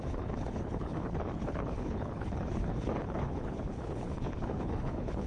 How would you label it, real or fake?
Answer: fake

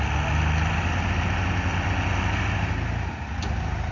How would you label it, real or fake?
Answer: real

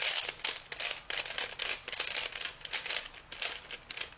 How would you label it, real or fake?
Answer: real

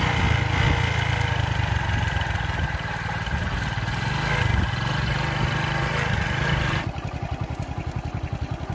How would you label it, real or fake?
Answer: real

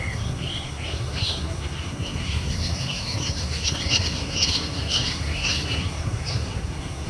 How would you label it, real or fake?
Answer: fake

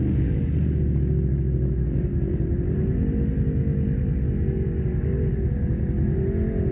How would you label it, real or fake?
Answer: real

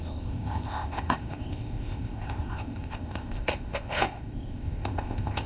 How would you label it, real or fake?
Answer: fake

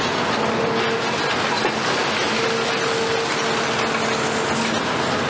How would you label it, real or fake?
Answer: real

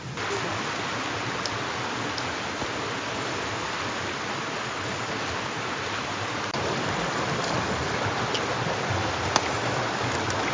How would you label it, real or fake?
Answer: real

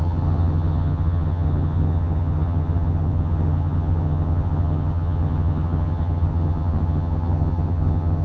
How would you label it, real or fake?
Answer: fake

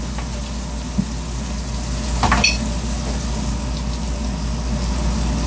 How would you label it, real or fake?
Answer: real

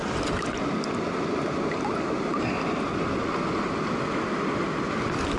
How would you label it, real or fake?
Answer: real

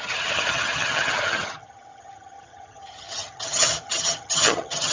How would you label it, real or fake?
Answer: fake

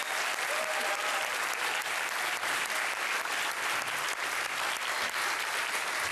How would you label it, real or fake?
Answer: real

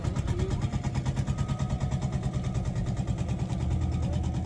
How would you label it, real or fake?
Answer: real